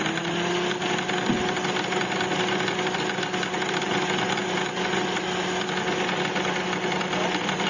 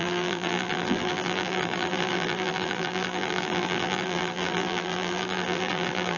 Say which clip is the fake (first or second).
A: second